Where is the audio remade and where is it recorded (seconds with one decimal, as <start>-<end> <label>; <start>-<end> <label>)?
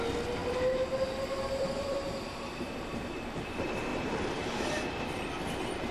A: 0.0-0.4 recorded; 0.4-3.5 remade; 3.5-3.9 recorded; 3.9-5.3 remade; 5.3-5.9 recorded